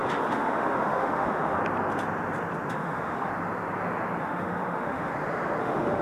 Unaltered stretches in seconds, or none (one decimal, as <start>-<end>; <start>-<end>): 1.6-2.7; 3.3-4.2; 5.1-5.6

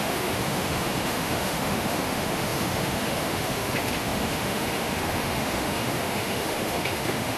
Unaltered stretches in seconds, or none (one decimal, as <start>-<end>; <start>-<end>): none